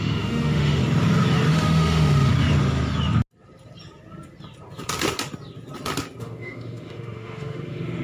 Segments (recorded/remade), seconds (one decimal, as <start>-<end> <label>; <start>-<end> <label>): 0.0-0.8 remade; 0.8-1.5 recorded; 1.5-2.3 remade; 2.3-6.2 recorded; 6.2-8.0 remade